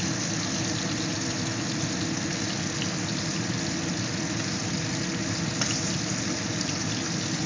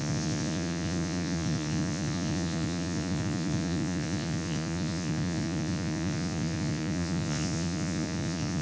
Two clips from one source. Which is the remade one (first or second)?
second